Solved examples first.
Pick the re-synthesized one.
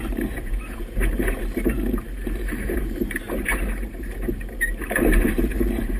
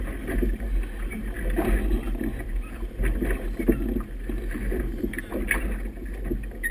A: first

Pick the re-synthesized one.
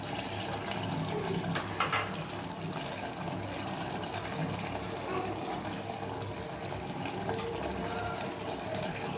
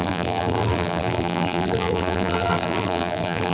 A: second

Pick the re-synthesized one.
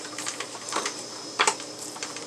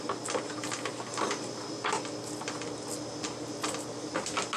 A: first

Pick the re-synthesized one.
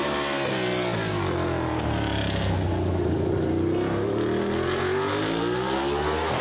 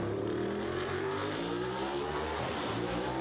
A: second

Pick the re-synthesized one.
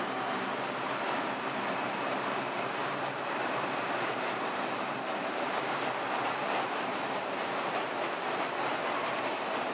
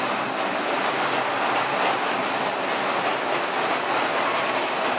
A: first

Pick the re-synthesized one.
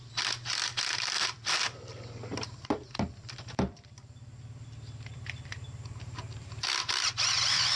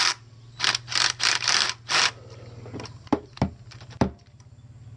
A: first